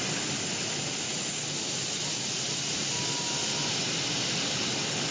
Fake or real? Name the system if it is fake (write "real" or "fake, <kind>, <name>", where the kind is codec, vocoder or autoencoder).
real